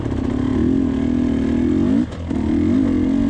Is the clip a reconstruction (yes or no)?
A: no